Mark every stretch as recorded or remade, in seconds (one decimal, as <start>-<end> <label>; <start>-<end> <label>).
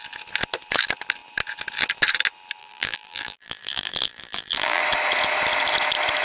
0.0-2.6 recorded; 2.6-4.8 remade; 4.8-6.2 recorded